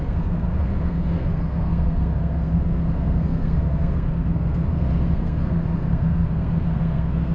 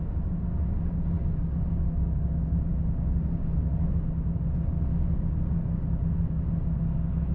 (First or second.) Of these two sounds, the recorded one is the second